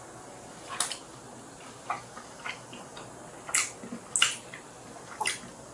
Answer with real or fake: real